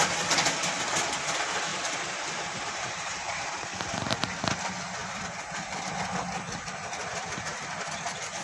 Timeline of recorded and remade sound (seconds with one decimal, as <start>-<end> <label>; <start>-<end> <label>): 0.0-1.7 recorded; 1.7-3.5 remade; 3.5-5.0 recorded; 5.0-5.8 remade; 5.8-7.0 recorded; 7.0-7.7 remade; 7.7-8.4 recorded